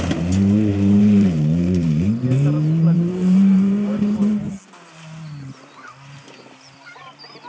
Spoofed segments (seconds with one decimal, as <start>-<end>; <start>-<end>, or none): 0.7-4.5